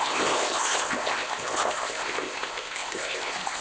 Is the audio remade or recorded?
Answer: remade